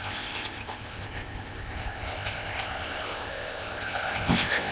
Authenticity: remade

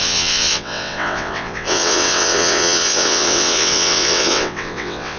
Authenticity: remade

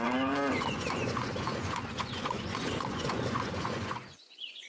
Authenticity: remade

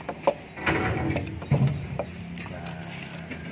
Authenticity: recorded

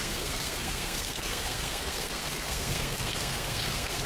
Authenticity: remade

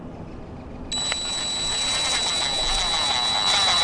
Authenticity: recorded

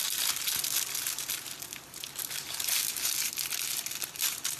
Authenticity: recorded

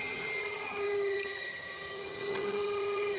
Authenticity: remade